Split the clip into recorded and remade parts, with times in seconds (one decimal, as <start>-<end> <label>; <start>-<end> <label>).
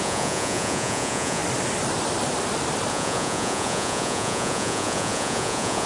0.0-1.4 remade; 1.4-2.9 recorded; 2.9-5.9 remade